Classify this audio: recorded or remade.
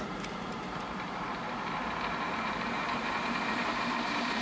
remade